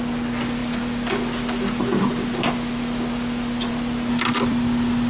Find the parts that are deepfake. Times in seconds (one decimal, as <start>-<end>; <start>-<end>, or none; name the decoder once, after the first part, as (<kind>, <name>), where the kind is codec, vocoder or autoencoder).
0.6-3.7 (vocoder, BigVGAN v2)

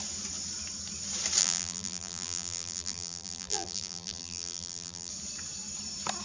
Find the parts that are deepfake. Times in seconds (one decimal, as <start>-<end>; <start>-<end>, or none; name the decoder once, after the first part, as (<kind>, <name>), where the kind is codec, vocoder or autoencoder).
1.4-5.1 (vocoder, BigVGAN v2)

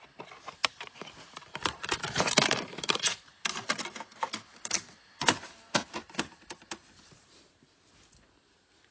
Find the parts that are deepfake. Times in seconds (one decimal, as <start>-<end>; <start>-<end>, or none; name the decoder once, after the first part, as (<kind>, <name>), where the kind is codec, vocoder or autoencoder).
0.6-3.1 (vocoder, BigVGAN v2); 4.5-7.5

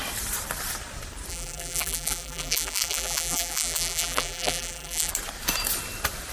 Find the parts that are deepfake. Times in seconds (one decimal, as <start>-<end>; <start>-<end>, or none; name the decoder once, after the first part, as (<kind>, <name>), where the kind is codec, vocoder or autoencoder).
1.3-5.1 (vocoder, BigVGAN v2)

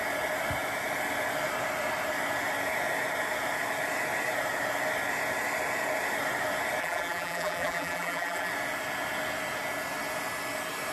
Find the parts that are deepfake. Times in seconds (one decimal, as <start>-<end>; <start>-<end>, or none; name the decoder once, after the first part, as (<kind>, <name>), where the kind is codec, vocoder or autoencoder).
6.8-8.5 (vocoder, BigVGAN v2)

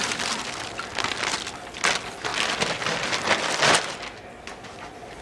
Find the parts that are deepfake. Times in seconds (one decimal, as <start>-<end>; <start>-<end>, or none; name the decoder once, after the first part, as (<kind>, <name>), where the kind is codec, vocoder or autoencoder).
none